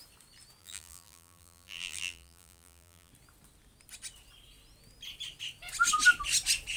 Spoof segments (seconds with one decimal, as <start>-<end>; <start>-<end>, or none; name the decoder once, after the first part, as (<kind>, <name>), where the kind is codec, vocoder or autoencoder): 0.6-3.1 (vocoder, BigVGAN v2)